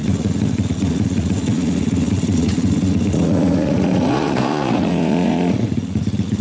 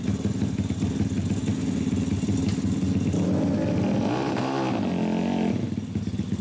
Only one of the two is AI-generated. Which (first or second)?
first